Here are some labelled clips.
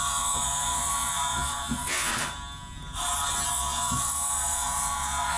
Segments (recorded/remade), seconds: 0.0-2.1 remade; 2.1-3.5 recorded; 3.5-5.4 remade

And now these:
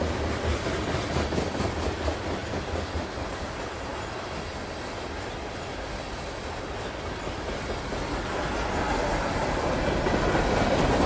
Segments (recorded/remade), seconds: 0.0-11.1 recorded

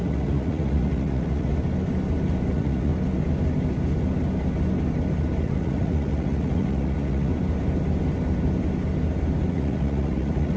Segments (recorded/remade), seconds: 0.0-1.5 remade; 1.5-2.5 recorded; 2.5-2.9 remade; 2.9-5.4 recorded; 5.4-7.3 remade; 7.3-9.5 recorded; 9.5-10.6 remade

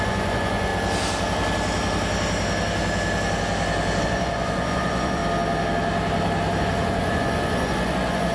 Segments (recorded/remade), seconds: 0.0-0.7 remade; 0.7-4.0 recorded; 4.0-5.2 remade; 5.2-6.6 recorded; 6.6-8.3 remade

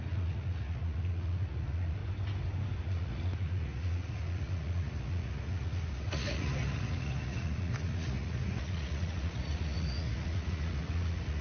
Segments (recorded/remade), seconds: 0.0-2.0 remade; 2.0-2.8 recorded; 2.8-11.4 remade

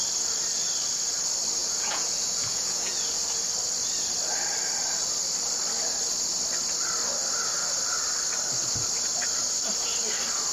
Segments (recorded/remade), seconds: 0.0-1.6 recorded; 1.6-3.0 remade; 3.0-10.5 recorded